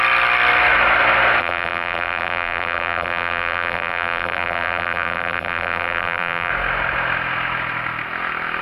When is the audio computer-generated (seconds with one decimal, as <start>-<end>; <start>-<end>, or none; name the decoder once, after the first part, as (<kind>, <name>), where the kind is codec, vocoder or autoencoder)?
1.4-6.5 (vocoder, BigVGAN v2)